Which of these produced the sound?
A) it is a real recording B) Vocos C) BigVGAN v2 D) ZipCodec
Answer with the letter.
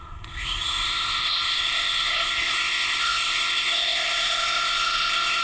D